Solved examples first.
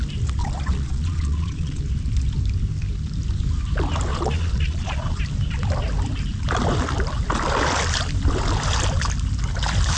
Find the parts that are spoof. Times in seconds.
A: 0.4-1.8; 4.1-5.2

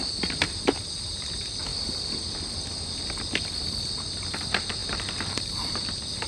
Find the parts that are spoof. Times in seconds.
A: 4.8-5.6

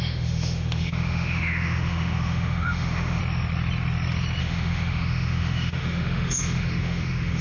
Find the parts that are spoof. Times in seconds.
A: 0.0-3.2; 4.4-7.4

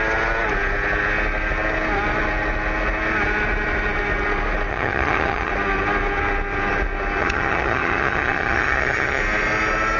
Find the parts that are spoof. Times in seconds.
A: 4.7-5.5; 7.2-9.2

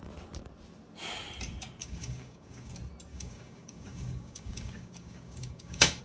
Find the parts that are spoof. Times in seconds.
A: 1.8-2.7; 3.1-6.0

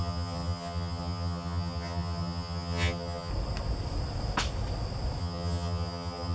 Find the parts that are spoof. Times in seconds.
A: 0.0-3.3; 5.2-6.3

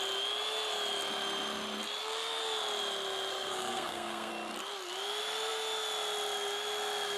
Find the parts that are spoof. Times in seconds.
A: 3.3-4.3